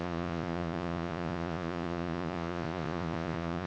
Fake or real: fake